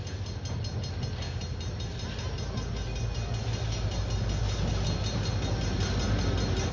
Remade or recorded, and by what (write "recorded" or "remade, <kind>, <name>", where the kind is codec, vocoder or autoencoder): recorded